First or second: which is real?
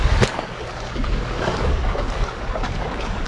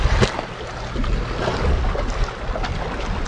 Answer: second